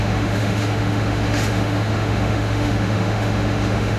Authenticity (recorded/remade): remade